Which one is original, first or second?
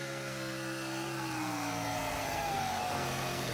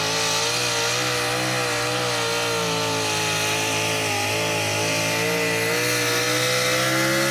second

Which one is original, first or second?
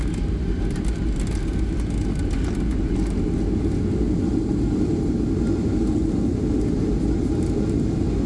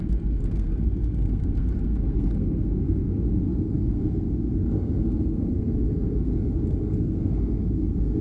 first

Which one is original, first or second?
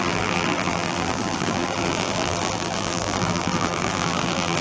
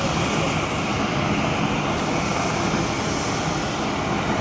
second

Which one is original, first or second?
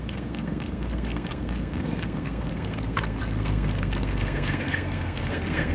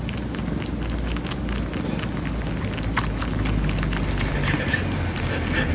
second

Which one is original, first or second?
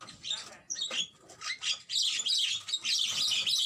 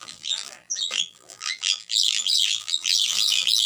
first